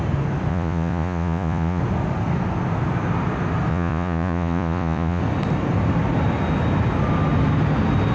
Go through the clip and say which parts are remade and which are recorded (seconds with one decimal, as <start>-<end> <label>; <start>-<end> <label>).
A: 0.0-0.5 recorded; 0.5-1.8 remade; 1.8-3.7 recorded; 3.7-5.2 remade; 5.2-8.1 recorded